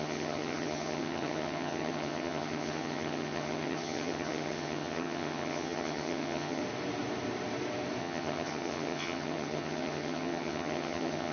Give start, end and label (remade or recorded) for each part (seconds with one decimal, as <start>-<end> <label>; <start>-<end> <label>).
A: 0.0-6.6 remade; 6.6-8.0 recorded; 8.0-11.3 remade

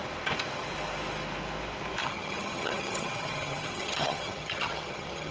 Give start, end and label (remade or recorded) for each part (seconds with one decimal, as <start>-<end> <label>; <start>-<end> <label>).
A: 0.0-2.0 recorded; 2.0-5.3 remade

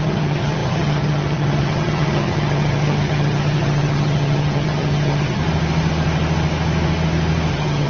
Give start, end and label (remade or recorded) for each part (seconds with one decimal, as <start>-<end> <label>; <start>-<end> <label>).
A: 0.0-5.4 remade; 5.4-7.5 recorded; 7.5-7.9 remade

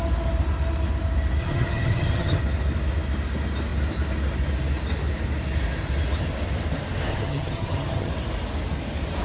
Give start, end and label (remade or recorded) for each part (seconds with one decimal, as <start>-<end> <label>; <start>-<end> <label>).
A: 0.0-1.4 recorded; 1.4-2.4 remade; 2.4-7.1 recorded; 7.1-8.1 remade; 8.1-9.2 recorded

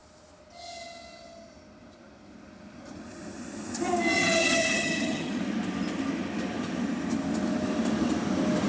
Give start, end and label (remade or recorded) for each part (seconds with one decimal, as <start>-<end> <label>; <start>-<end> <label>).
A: 0.0-4.2 recorded; 4.2-5.4 remade; 5.4-8.7 recorded

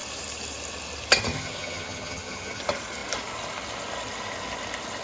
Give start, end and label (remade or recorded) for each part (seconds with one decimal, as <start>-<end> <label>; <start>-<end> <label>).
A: 0.0-1.3 recorded; 1.3-2.6 remade; 2.6-5.0 recorded